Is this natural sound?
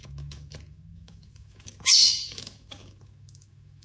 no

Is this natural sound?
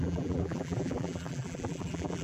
no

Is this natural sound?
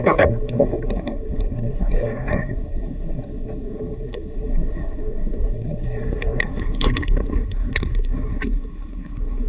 no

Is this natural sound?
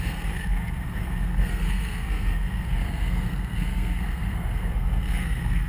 no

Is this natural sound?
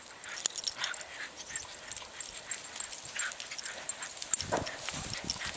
yes